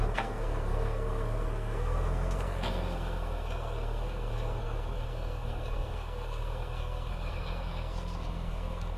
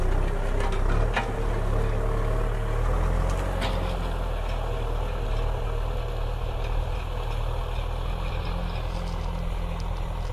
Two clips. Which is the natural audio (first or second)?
second